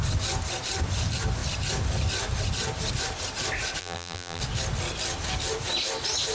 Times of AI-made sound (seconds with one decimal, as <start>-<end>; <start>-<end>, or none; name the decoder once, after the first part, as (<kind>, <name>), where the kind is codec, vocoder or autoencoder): 3.8-4.4 (vocoder, BigVGAN v2)